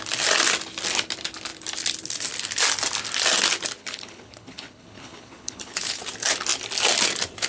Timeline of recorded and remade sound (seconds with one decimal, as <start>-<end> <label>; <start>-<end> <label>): 0.0-3.8 recorded; 3.8-6.0 remade; 6.0-7.5 recorded